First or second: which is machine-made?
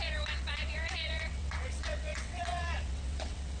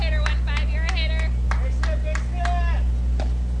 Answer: first